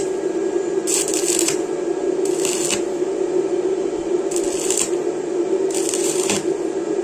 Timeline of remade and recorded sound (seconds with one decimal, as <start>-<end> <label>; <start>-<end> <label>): 0.0-7.0 recorded